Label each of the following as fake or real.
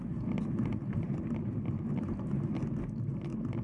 real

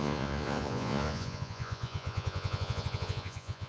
fake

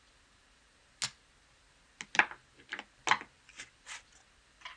real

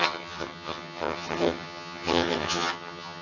fake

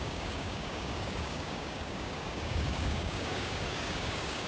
fake